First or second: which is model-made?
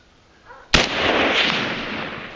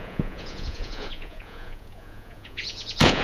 second